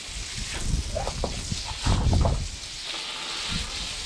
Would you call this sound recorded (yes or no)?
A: yes